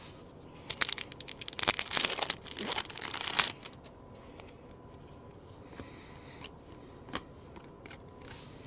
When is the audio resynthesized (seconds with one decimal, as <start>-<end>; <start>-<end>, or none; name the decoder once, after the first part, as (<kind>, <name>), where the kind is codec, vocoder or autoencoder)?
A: none